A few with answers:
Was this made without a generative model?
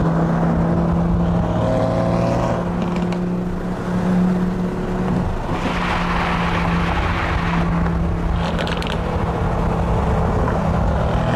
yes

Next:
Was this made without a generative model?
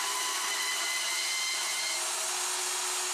yes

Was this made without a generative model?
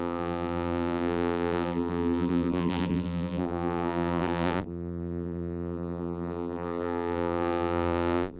no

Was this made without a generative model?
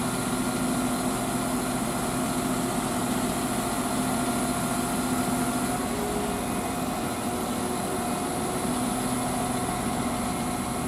yes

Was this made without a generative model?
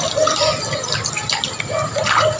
yes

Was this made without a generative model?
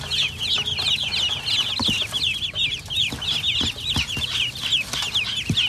yes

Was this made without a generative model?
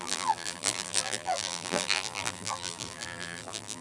no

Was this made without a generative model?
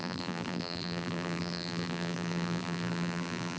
no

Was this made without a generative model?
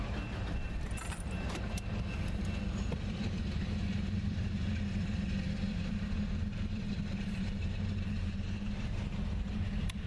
no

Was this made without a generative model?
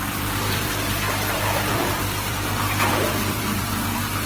no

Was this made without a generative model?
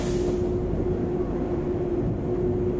yes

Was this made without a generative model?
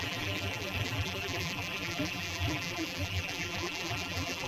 no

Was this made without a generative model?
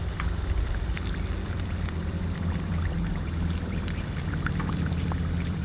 no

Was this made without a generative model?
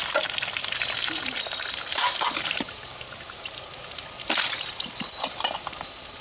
no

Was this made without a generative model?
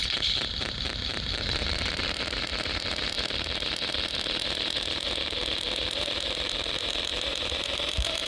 no